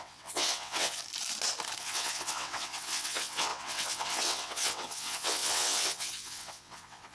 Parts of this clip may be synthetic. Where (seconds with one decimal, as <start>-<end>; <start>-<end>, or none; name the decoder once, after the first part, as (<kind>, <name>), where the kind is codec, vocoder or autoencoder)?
0.0-1.0 (vocoder, WaveNeXt); 1.8-7.1